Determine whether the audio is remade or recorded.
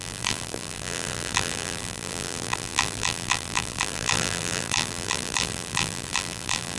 remade